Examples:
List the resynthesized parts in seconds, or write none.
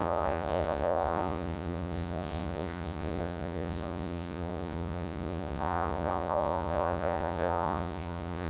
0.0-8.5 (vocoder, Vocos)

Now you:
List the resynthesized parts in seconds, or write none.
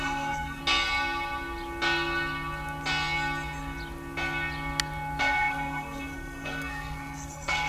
0.0-0.6 (codec, SNAC); 5.2-7.7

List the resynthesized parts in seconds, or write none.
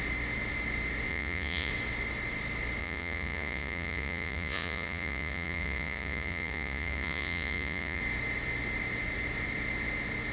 1.1-1.7 (vocoder, Vocos); 2.8-8.0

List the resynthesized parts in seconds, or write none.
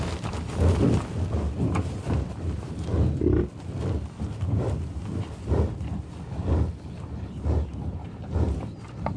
none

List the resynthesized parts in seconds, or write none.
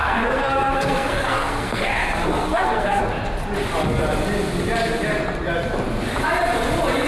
0.0-1.9 (codec, SNAC); 2.4-3.0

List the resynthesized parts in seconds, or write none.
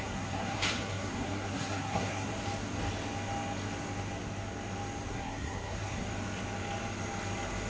0.0-2.3 (codec, SNAC); 5.1-6.1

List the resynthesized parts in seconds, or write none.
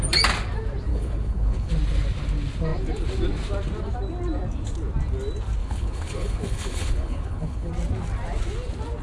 0.9-1.7 (codec, HILCodec); 5.6-7.7